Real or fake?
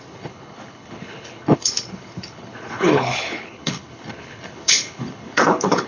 fake